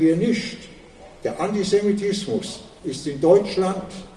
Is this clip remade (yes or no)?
no